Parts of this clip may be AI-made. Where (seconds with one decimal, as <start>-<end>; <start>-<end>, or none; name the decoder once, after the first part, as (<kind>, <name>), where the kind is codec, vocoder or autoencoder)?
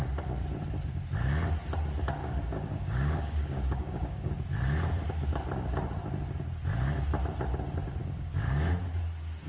2.2-4.3 (codec, DAC); 8.0-8.7